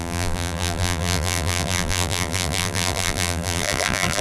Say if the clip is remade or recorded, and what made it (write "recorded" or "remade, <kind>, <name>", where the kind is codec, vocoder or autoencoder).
remade, vocoder, BigVGAN v2